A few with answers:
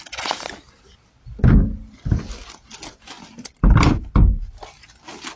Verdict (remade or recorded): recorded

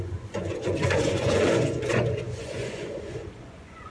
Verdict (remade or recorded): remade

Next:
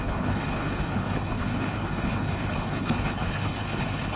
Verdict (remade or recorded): remade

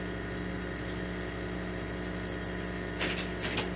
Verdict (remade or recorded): recorded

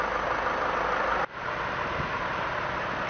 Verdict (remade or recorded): recorded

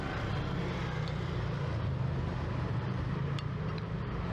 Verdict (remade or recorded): recorded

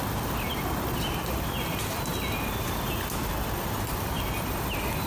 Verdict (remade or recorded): recorded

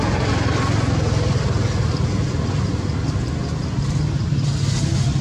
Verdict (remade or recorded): recorded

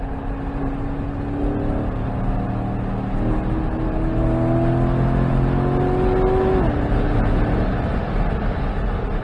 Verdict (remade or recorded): recorded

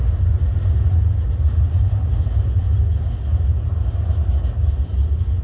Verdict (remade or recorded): recorded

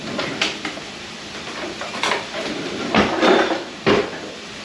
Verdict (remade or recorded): remade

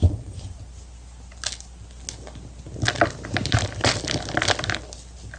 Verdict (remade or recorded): recorded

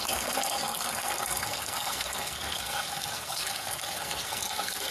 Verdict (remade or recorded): remade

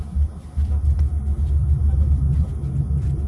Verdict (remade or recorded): recorded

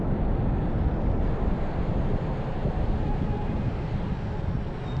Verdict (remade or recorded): recorded